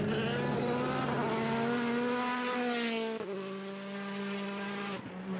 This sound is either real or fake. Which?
real